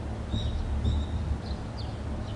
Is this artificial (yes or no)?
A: no